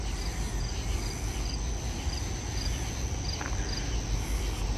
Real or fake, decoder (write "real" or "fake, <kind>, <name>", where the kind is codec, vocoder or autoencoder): real